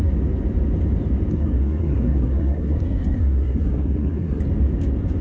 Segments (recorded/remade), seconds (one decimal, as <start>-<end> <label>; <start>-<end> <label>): 0.0-1.3 recorded; 1.3-4.4 remade; 4.4-5.2 recorded